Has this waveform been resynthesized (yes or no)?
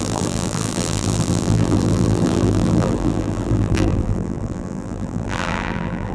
yes